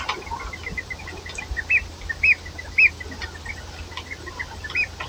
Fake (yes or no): no